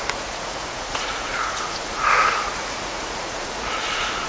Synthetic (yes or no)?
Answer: yes